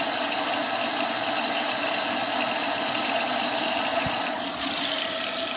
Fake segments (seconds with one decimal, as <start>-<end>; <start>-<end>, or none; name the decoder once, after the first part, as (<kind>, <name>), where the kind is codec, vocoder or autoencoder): 3.9-4.7 (vocoder, Vocos)